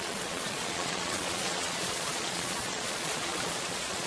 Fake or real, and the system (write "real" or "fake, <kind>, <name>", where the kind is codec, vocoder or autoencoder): fake, vocoder, Vocos